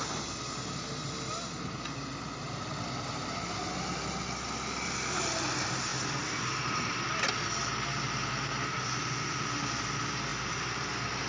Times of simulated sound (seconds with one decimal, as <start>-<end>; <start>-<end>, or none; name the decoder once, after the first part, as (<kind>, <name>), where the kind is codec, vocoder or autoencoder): none